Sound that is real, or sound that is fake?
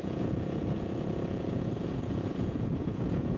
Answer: fake